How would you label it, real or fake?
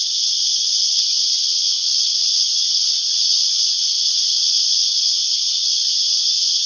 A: fake